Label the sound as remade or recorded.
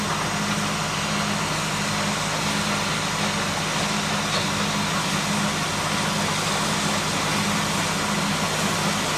recorded